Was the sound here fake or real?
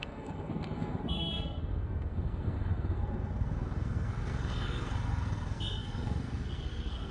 fake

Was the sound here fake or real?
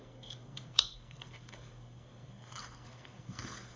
fake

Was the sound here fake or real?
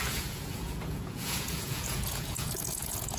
fake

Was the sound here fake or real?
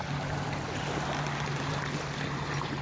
real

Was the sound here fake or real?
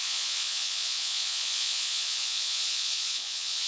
fake